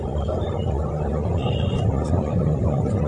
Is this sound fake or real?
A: fake